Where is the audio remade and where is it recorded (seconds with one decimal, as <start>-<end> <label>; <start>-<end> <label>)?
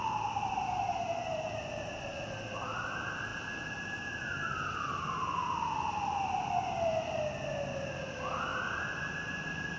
0.0-0.9 recorded; 0.9-1.6 remade; 1.6-9.8 recorded